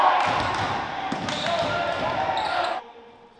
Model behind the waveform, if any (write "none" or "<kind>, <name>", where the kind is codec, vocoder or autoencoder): none